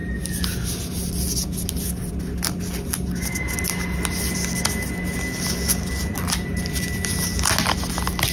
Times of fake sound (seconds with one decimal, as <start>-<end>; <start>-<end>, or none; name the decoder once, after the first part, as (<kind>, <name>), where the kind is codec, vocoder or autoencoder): none